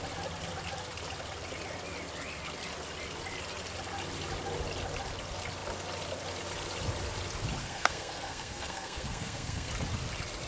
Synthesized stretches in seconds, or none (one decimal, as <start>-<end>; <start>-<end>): 7.6-9.7